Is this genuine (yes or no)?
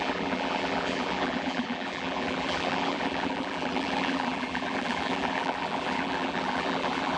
no